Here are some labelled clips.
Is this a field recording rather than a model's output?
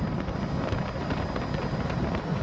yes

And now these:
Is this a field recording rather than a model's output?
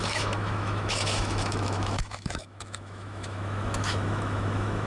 no